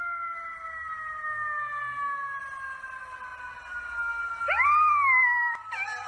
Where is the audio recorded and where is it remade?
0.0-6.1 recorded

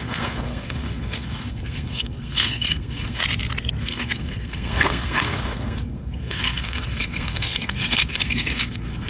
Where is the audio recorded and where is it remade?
0.0-3.2 remade; 3.2-3.8 recorded; 3.8-9.1 remade

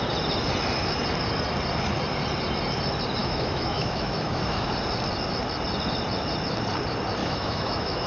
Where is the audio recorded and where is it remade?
0.0-3.2 recorded; 3.2-4.7 remade; 4.7-7.2 recorded; 7.2-8.1 remade